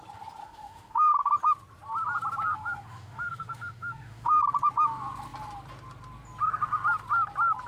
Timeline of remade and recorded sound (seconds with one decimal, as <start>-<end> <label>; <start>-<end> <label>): 0.0-0.4 recorded; 0.4-1.3 remade; 1.3-2.5 recorded; 2.5-4.4 remade; 4.4-7.7 recorded